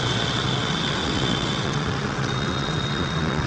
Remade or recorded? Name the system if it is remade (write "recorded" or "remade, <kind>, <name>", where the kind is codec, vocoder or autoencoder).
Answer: remade, vocoder, WaveNeXt